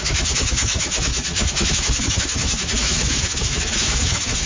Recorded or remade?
remade